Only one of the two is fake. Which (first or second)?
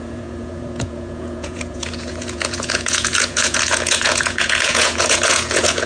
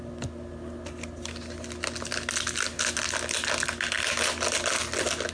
first